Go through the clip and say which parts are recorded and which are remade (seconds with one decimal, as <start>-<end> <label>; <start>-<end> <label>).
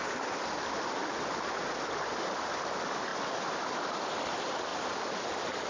0.0-5.7 recorded